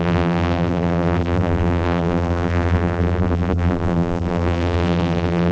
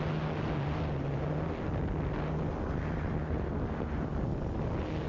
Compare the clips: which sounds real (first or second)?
second